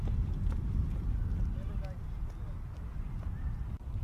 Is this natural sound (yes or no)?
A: yes